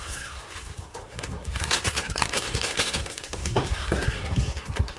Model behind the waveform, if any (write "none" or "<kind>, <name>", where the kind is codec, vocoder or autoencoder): codec, SNAC